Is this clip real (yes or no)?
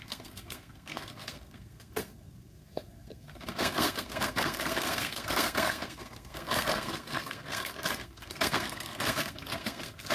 no